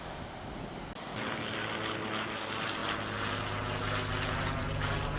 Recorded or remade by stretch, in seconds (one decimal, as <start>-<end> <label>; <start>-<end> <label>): 0.0-5.2 recorded